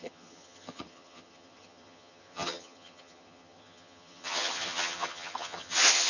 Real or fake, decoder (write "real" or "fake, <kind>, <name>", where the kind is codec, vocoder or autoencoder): fake, vocoder, HiFi-GAN